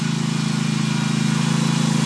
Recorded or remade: recorded